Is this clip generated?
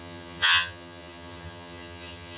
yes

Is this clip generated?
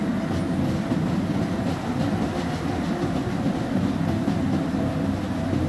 no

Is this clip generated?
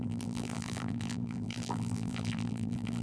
yes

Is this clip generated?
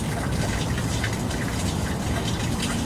no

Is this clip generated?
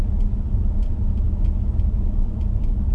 no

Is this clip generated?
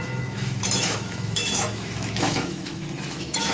yes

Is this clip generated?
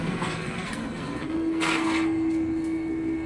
yes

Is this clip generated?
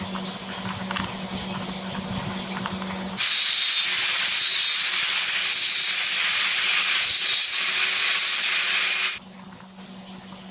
no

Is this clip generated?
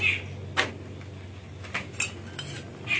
no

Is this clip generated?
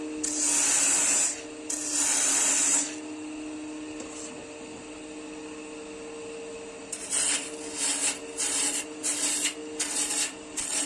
no